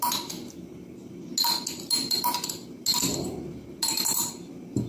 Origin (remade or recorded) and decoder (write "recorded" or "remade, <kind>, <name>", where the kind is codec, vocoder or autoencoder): recorded